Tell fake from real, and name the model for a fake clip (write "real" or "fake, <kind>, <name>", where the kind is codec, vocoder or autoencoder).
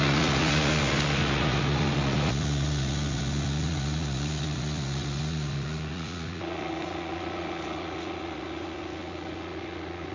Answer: fake, vocoder, Vocos